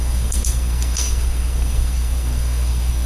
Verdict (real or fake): fake